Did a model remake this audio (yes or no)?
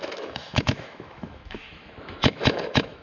yes